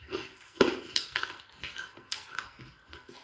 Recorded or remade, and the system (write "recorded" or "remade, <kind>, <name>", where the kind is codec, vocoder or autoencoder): remade, codec, SNAC